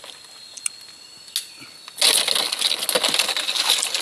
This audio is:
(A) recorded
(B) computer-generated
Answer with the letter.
A